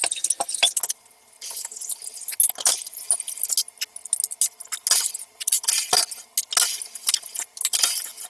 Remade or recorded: recorded